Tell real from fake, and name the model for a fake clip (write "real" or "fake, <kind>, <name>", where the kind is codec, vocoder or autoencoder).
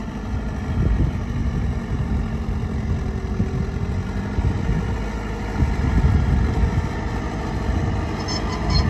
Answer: real